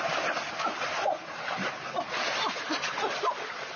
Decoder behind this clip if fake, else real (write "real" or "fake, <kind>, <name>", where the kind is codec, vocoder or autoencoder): real